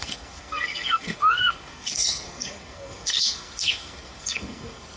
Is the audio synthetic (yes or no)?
yes